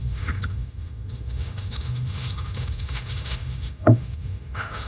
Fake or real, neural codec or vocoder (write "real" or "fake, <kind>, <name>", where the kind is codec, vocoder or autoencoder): fake, autoencoder, DAC-VAE